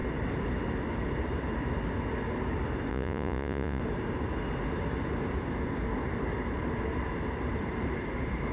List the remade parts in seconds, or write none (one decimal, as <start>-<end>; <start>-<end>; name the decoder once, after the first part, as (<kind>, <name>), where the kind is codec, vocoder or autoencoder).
2.9-3.8 (vocoder, Vocos)